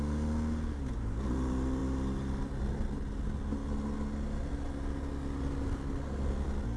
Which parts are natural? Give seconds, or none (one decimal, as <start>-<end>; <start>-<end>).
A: 0.0-6.8